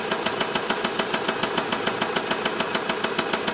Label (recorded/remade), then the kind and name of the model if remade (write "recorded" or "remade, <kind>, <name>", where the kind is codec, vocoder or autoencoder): recorded